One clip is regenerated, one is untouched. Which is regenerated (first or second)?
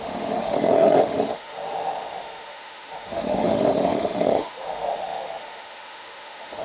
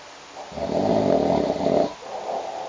first